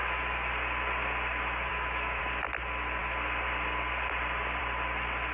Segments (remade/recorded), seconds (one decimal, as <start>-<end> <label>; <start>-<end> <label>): 0.0-0.5 remade; 0.5-1.7 recorded; 1.7-2.2 remade; 2.2-5.3 recorded